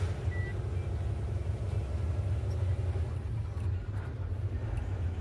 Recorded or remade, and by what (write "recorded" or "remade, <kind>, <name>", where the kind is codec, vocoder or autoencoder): recorded